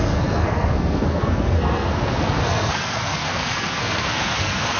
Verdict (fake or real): fake